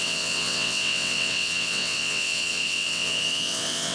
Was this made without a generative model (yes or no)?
no